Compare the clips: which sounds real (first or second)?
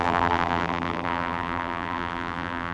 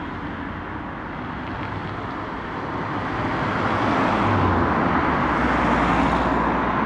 second